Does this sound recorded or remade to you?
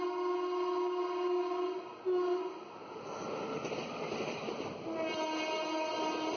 recorded